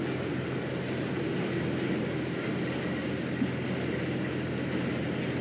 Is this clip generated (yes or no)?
no